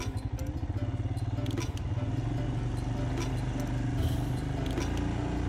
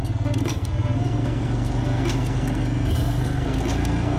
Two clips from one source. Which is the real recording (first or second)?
first